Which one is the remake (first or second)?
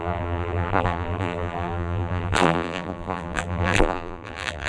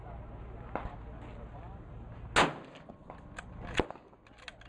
first